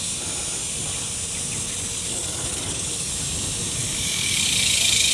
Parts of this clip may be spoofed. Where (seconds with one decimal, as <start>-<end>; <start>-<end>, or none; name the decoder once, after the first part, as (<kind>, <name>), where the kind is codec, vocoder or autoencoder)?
2.1-3.1 (codec, DAC); 3.8-5.1

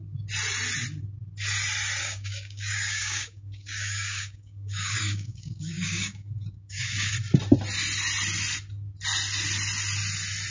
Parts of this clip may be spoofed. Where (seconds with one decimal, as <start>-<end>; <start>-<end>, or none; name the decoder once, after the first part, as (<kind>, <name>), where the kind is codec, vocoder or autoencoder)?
2.0-7.1 (codec, DAC)

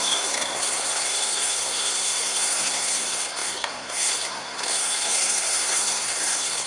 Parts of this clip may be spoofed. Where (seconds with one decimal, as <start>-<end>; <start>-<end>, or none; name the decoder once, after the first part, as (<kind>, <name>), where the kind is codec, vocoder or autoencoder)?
0.0-6.7 (codec, SNAC)

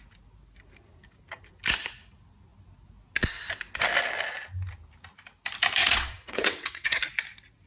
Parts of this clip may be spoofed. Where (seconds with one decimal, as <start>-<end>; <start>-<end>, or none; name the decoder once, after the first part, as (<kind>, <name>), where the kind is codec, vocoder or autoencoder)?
5.8-7.0 (vocoder, WaveNeXt)

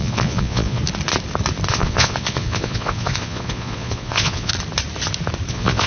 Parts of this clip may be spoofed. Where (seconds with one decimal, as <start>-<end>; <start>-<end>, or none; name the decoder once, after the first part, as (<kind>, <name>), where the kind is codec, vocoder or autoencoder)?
0.0-0.8 (vocoder, Vocos); 1.7-4.5; 5.5-5.9